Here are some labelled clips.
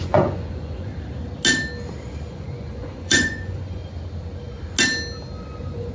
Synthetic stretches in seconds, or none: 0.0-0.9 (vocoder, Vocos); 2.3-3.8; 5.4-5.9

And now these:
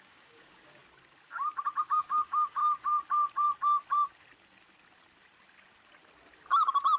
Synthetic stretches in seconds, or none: 0.0-0.8 (codec, DAC); 1.8-2.6

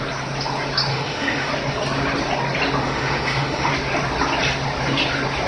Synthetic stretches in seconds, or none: 0.9-1.5 (autoencoder, DAC-VAE); 2.8-3.7